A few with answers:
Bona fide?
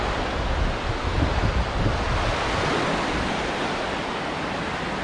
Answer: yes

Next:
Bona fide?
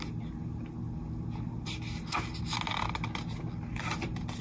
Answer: yes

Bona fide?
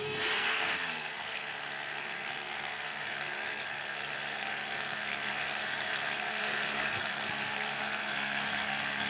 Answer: no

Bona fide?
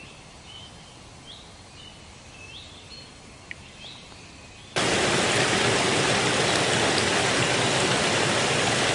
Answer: yes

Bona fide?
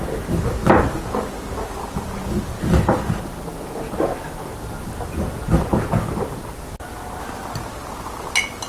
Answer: yes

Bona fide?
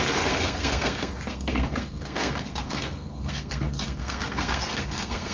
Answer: no